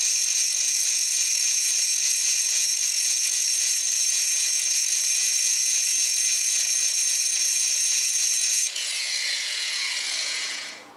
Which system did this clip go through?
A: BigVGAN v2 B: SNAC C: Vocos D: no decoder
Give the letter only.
C